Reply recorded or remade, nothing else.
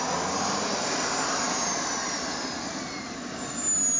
recorded